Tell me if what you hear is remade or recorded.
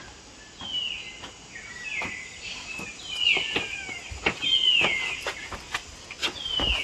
recorded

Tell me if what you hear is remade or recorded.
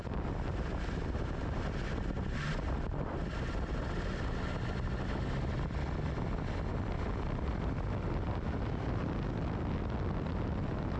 recorded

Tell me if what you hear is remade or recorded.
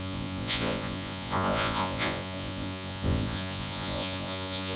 remade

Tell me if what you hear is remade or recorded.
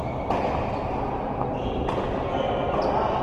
recorded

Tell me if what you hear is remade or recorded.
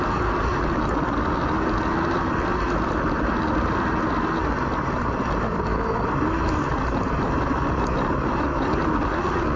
recorded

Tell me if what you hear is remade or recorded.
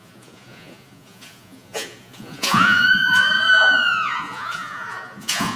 remade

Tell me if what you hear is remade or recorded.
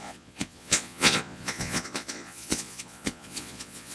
remade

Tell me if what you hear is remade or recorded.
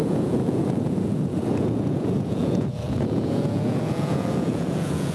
remade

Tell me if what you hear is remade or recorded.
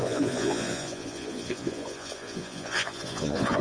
remade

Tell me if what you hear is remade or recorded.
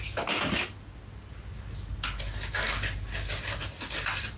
recorded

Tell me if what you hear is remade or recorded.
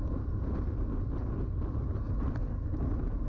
recorded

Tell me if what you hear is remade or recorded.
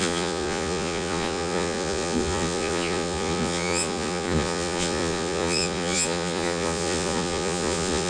remade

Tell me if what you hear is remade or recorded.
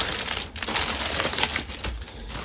recorded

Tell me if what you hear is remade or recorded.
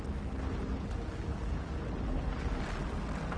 recorded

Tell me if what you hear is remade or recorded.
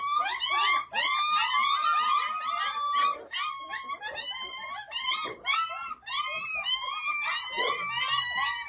recorded